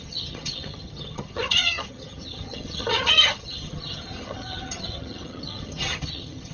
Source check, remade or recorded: remade